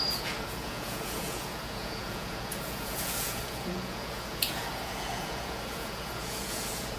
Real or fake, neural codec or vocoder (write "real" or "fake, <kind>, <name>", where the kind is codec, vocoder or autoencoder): fake, vocoder, Vocos